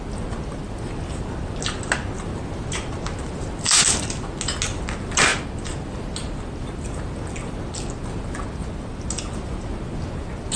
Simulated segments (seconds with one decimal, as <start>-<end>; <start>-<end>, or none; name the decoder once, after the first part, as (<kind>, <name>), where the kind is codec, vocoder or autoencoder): none